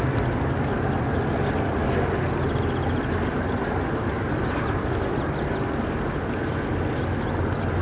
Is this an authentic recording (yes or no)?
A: yes